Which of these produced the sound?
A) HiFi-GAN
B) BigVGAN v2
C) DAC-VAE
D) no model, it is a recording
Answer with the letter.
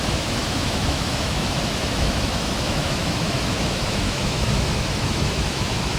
C